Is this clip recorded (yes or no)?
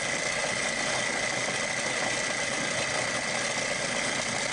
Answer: yes